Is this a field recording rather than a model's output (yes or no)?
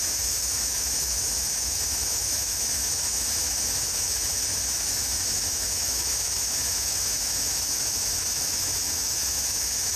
no